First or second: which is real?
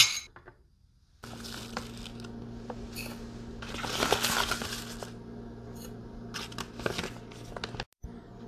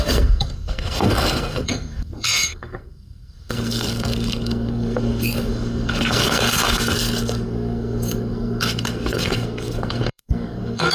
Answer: first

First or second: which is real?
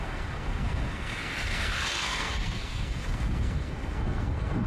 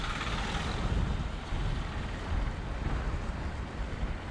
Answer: second